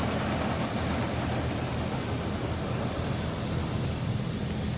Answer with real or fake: real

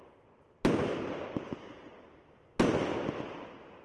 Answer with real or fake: real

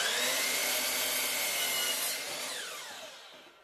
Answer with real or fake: real